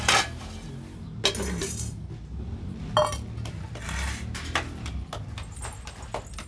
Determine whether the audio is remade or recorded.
recorded